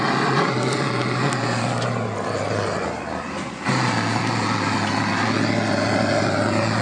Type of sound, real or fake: real